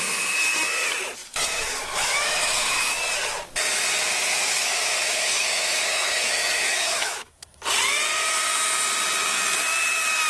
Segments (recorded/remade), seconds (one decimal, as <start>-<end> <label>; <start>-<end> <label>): 0.0-1.2 recorded; 1.2-3.0 remade; 3.0-4.4 recorded; 4.4-7.7 remade; 7.7-10.3 recorded